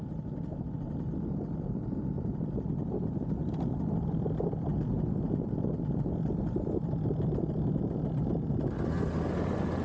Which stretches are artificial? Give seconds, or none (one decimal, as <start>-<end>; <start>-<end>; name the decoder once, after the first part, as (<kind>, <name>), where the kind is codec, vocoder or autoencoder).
none